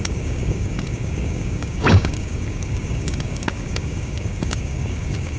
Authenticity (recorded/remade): remade